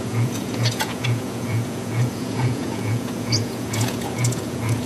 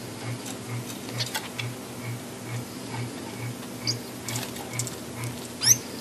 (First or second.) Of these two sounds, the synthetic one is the first